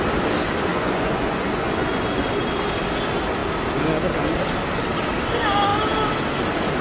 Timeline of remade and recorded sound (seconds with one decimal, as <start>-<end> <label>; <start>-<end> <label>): 0.0-0.7 recorded; 0.7-2.2 remade; 2.2-6.8 recorded